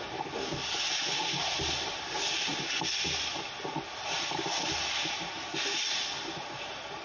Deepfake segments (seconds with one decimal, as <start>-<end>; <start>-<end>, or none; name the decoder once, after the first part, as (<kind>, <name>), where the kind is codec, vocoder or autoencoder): none